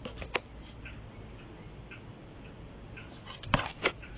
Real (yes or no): yes